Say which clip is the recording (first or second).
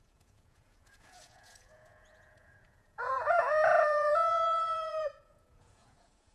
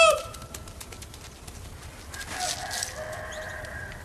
second